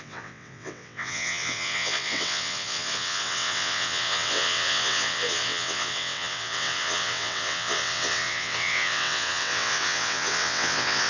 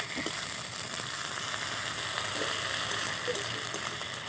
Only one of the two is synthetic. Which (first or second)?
first